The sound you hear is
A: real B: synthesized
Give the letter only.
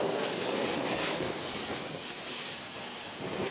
B